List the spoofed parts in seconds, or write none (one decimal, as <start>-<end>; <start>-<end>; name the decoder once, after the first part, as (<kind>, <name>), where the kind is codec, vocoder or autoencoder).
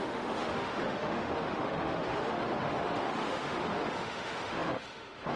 0.0-5.4 (autoencoder, DAC-VAE)